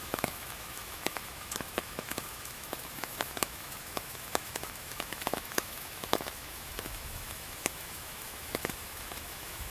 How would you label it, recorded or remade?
remade